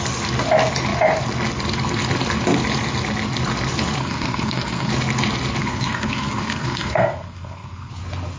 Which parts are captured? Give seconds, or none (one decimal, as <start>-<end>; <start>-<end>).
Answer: 0.0-4.0; 4.9-5.6; 7.9-8.4